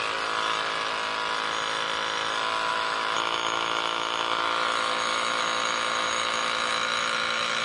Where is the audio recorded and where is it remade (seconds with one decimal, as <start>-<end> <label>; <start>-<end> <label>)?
0.0-2.7 recorded; 2.7-7.6 remade